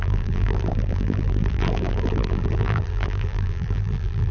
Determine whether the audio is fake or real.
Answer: fake